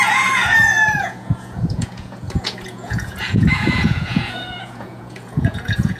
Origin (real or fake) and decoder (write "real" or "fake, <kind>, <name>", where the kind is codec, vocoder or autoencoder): fake, vocoder, Vocos